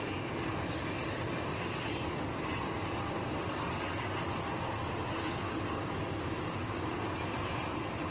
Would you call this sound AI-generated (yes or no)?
no